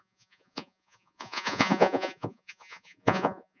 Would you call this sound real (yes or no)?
no